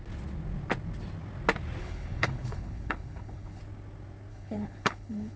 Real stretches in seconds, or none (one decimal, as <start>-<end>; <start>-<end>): 0.0-1.8; 3.6-4.3